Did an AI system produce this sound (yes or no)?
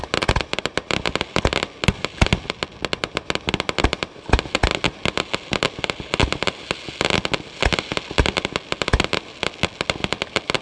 no